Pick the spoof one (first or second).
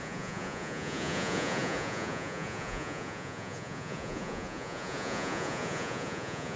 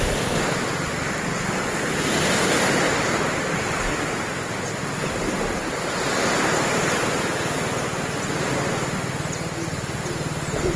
first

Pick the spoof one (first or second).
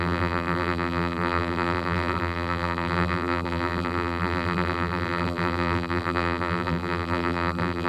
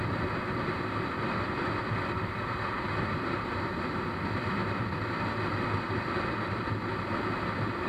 first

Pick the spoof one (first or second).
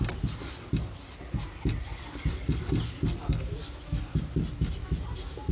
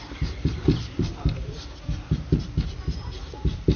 second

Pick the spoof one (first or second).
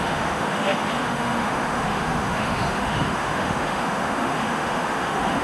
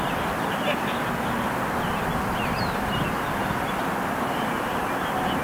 first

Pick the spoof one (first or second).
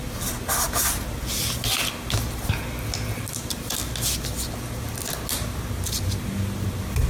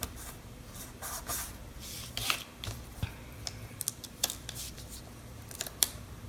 second